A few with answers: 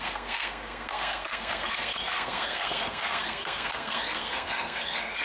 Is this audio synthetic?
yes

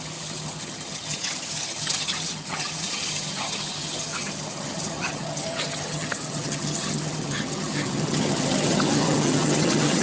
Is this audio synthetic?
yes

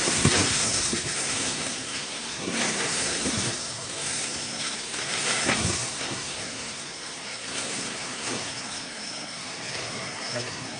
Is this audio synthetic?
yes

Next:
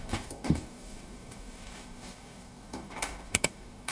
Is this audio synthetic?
yes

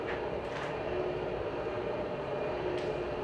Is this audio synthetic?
yes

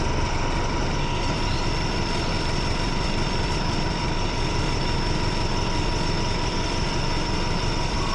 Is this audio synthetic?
yes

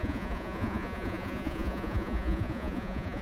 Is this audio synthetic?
yes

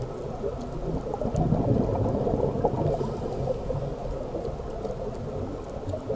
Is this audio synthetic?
no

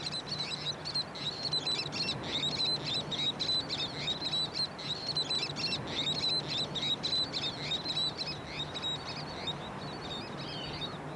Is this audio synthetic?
no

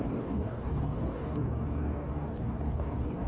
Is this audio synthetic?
yes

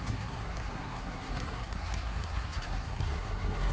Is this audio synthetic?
yes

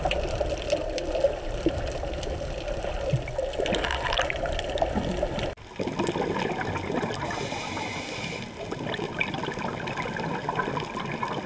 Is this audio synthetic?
no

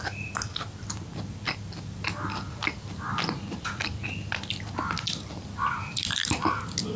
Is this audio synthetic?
no